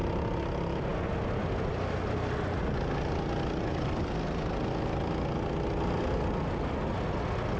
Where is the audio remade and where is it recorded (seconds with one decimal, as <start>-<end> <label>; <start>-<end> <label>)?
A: 0.0-7.6 recorded